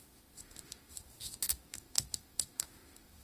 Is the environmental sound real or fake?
fake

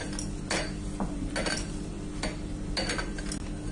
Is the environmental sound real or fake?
real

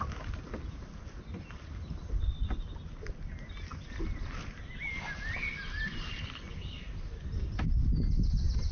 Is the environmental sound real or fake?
real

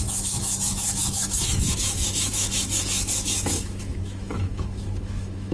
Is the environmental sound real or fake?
fake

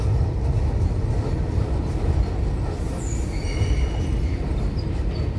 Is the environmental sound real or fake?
real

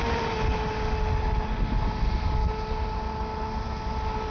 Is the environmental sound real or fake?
real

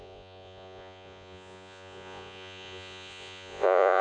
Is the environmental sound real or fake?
fake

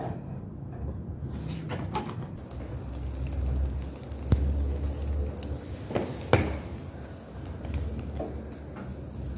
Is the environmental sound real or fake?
real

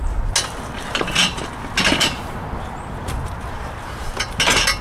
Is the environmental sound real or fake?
real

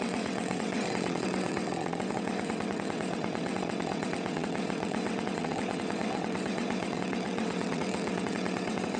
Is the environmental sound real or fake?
fake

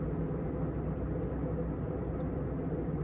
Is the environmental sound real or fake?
real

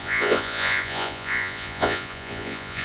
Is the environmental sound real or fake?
fake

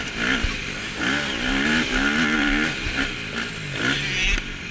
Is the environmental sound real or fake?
real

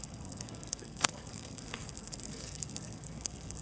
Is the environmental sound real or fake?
fake